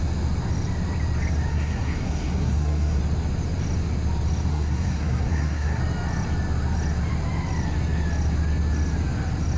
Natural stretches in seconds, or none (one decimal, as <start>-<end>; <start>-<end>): 0.0-1.5; 3.0-4.5; 5.8-9.6